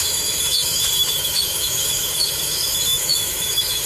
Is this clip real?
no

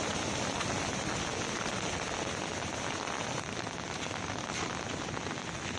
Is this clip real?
yes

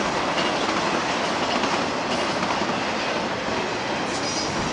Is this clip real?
yes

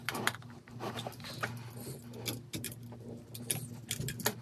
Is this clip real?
yes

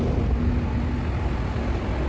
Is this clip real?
yes